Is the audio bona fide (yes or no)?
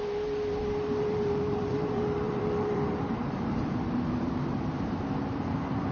no